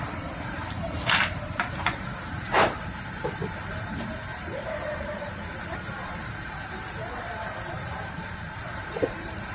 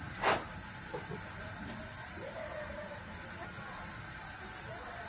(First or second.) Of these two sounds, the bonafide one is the second